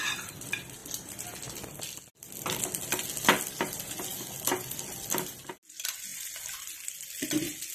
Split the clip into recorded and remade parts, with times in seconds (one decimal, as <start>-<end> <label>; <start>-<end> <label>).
0.0-7.7 recorded